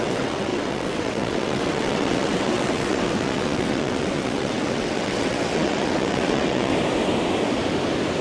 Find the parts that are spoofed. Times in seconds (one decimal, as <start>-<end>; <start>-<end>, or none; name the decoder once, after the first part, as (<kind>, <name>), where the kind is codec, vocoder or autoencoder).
0.0-6.7 (vocoder, WaveNeXt)